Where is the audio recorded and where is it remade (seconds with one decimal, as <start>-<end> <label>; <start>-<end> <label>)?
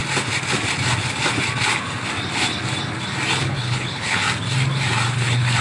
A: 0.0-3.4 recorded; 3.4-4.2 remade; 4.2-5.1 recorded; 5.1-5.6 remade